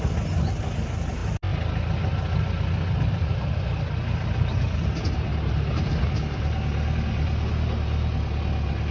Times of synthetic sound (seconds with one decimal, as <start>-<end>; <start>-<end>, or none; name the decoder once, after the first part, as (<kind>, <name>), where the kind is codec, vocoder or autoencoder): none